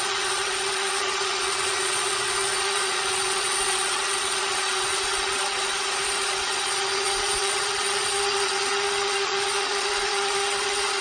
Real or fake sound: fake